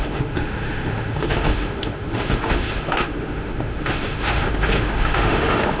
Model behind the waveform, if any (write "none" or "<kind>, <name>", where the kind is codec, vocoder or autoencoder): autoencoder, DAC-VAE